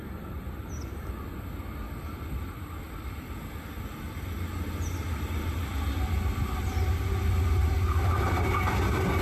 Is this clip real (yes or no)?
yes